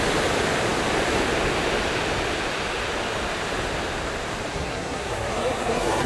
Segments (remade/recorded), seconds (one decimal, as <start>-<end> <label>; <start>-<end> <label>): 0.0-4.5 recorded; 4.5-6.1 remade